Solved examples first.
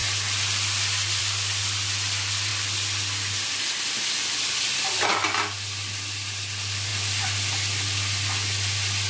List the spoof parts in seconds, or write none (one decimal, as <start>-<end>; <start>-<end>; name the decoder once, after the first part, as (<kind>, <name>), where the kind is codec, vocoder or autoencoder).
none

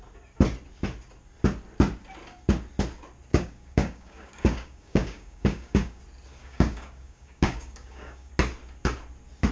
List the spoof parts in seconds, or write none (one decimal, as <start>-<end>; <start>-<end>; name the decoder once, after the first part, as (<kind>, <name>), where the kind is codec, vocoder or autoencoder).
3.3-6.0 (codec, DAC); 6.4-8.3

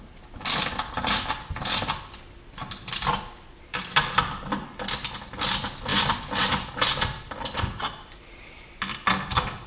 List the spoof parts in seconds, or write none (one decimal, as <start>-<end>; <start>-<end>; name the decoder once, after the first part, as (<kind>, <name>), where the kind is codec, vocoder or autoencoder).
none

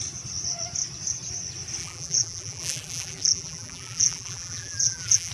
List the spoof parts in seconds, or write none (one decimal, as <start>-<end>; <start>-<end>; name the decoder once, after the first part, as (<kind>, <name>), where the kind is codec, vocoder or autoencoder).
1.8-5.3 (vocoder, BigVGAN v2)

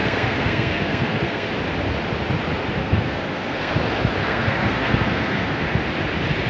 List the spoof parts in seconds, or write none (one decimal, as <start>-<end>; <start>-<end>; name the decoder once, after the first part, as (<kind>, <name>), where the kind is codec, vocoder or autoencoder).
0.0-1.5 (codec, SNAC); 2.8-3.7; 4.2-5.6

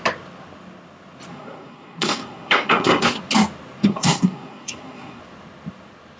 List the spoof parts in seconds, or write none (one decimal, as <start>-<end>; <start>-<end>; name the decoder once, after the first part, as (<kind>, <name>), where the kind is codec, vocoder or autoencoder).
1.3-3.2 (codec, SNAC); 3.8-5.2

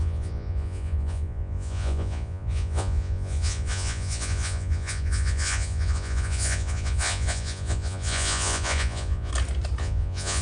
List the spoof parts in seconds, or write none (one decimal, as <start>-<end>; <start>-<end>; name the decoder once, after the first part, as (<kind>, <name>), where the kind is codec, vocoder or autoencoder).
0.0-9.3 (vocoder, Vocos); 9.8-10.4

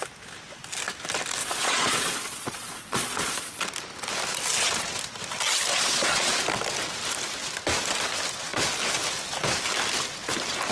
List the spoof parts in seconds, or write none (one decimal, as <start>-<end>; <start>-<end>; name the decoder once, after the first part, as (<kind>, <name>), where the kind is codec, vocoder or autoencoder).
1.4-3.6 (vocoder, Vocos); 5.7-6.3